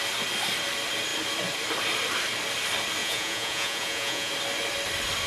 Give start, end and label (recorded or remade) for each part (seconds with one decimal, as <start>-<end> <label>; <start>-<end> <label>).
0.0-3.0 recorded; 3.0-4.3 remade; 4.3-5.3 recorded